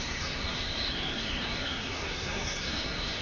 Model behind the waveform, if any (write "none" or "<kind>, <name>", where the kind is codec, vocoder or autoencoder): codec, SNAC